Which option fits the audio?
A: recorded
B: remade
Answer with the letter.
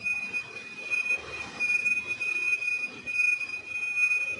A